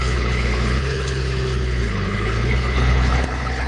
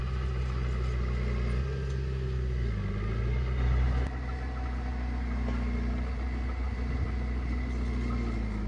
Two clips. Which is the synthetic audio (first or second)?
first